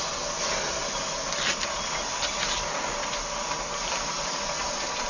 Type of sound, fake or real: real